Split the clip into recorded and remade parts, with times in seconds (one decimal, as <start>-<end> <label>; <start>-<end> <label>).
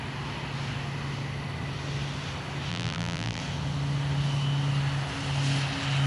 0.0-2.7 recorded; 2.7-3.4 remade; 3.4-6.1 recorded